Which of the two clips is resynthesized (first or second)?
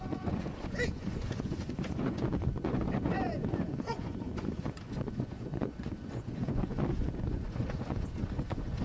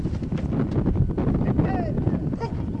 first